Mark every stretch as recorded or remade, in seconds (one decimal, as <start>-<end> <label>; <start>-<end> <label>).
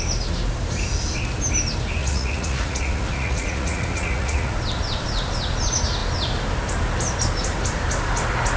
0.0-2.0 recorded; 2.0-4.5 remade; 4.5-8.6 recorded